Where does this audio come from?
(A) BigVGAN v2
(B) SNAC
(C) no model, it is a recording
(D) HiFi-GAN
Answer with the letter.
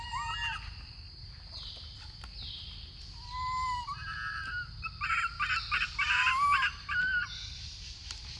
C